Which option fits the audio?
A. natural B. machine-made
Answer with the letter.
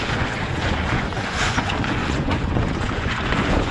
B